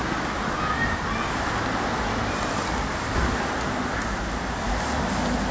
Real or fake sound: real